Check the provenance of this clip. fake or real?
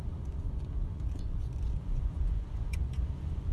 fake